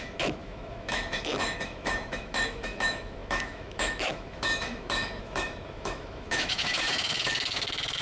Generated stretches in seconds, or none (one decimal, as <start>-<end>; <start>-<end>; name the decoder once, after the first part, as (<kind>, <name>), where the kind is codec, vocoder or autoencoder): 0.0-8.0 (autoencoder, DAC-VAE)

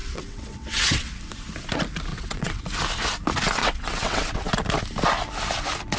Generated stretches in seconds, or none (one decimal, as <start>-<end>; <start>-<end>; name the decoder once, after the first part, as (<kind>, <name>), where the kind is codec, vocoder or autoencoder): 0.0-1.1 (vocoder, WaveNeXt); 2.1-2.6; 3.6-4.5